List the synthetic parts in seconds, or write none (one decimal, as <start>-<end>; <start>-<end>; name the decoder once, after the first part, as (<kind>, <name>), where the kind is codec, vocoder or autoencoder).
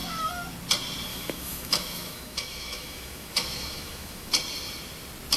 1.1-4.3 (autoencoder, DAC-VAE)